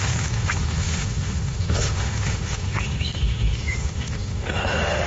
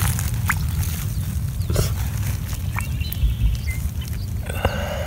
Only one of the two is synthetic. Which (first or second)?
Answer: first